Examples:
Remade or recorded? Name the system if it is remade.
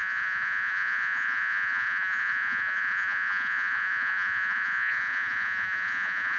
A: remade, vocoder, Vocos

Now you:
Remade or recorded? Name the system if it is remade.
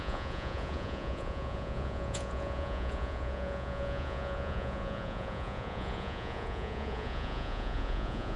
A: remade, vocoder, Vocos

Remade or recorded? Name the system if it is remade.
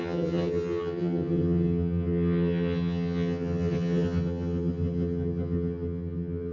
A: remade, vocoder, HiFi-GAN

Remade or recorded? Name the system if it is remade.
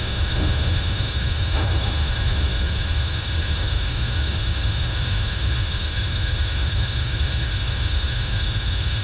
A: remade, autoencoder, DAC-VAE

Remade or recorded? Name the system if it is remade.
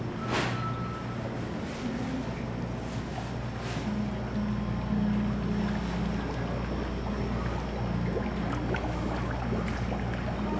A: recorded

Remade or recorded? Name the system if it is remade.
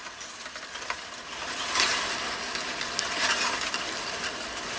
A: recorded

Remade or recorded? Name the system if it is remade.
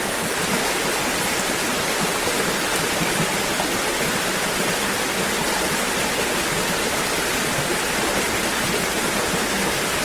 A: recorded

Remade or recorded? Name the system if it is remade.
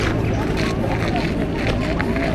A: recorded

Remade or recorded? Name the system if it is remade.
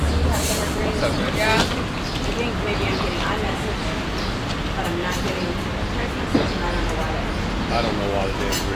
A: recorded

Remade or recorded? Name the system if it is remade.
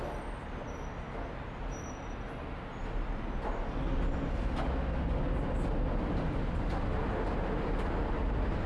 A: recorded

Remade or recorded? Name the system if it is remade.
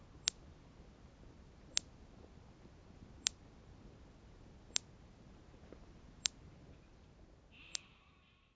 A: recorded